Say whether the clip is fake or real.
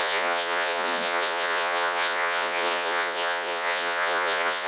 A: fake